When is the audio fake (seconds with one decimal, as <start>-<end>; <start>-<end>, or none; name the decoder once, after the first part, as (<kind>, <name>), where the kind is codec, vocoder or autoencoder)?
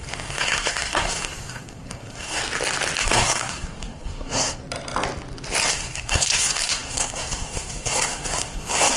0.0-2.4 (codec, SNAC); 3.0-4.6; 5.7-9.0